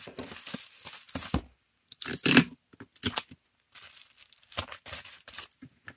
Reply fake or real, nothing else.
real